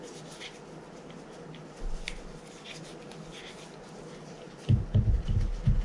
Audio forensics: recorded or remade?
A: recorded